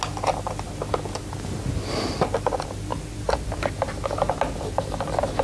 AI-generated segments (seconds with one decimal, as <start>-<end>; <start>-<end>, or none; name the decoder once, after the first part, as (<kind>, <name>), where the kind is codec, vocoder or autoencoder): none